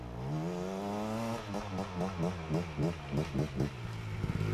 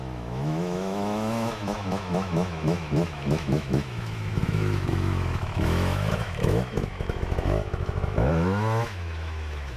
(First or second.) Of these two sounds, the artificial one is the second